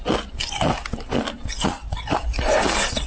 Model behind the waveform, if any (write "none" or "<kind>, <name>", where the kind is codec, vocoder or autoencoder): none